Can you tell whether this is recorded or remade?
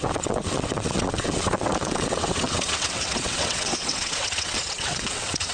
remade